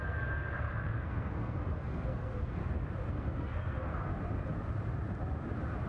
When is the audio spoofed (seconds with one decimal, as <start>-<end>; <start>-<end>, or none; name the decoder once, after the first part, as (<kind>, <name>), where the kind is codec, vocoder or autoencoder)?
0.0-2.6 (codec, SNAC); 3.1-4.1